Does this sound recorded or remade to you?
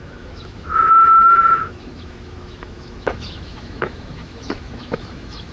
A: remade